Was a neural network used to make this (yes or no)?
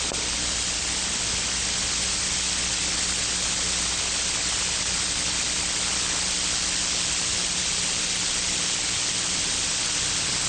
no